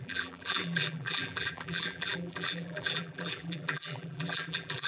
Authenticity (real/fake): fake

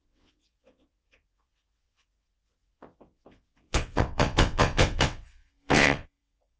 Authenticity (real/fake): fake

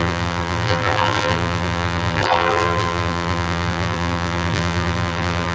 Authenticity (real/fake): fake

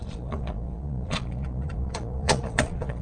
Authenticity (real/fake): fake